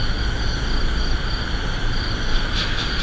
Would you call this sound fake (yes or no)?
no